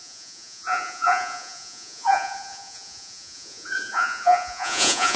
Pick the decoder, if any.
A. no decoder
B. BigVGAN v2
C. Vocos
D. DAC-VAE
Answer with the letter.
C